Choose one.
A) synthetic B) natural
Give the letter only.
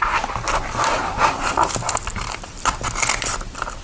B